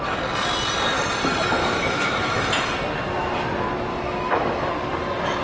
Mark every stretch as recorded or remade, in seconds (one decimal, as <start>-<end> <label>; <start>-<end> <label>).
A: 0.0-1.6 recorded; 1.6-2.4 remade; 2.4-3.9 recorded; 3.9-4.7 remade; 4.7-5.4 recorded